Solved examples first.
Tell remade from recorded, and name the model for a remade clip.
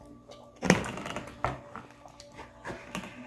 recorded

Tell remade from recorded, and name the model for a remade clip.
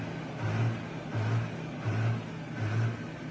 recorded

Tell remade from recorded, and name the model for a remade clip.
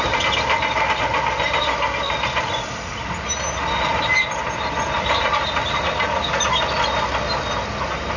recorded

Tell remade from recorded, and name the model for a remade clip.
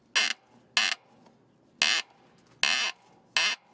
recorded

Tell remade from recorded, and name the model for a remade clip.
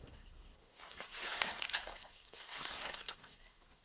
remade, codec, SNAC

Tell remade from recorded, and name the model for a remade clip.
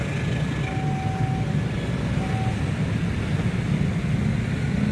recorded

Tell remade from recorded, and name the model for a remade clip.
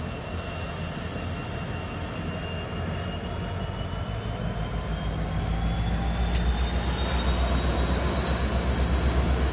recorded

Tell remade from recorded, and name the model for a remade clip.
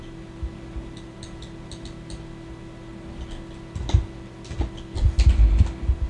recorded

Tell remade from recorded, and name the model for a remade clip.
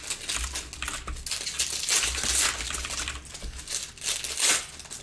recorded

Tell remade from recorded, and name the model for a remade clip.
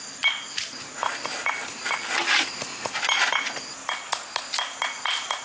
recorded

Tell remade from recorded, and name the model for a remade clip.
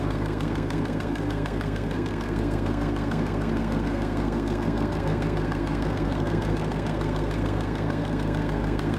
remade, codec, SNAC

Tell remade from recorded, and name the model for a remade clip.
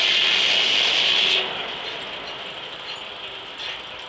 recorded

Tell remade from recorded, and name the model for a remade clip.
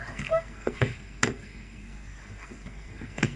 remade, codec, SNAC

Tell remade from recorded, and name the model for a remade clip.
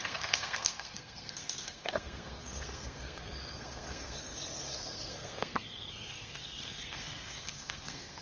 remade, codec, SNAC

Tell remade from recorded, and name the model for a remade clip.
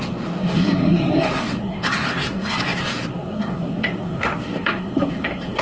remade, codec, SNAC